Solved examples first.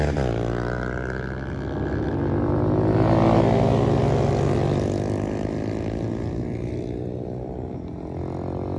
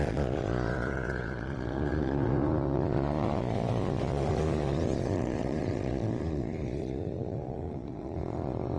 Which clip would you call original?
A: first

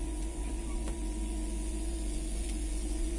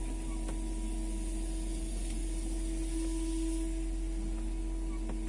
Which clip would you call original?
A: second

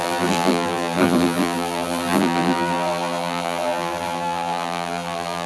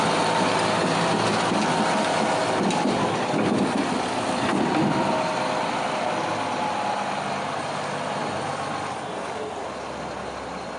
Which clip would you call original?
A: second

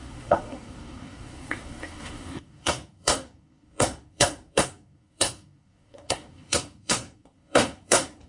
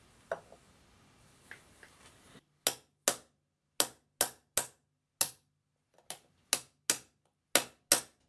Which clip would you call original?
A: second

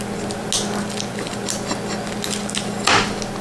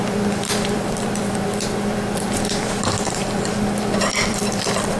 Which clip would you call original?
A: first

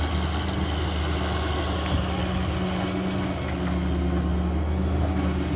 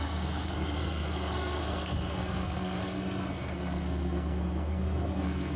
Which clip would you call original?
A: first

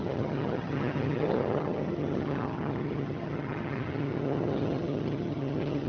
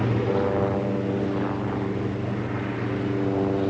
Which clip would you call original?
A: second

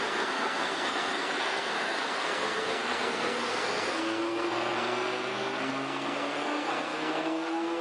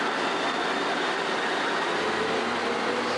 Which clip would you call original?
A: second